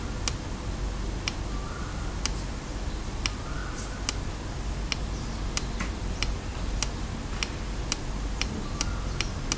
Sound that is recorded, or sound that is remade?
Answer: recorded